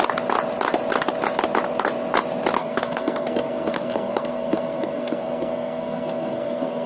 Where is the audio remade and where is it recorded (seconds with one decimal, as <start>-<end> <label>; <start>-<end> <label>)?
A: 0.0-2.6 recorded; 2.6-6.9 remade